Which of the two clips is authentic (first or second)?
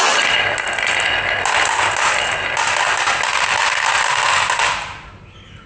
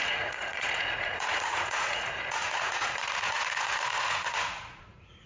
first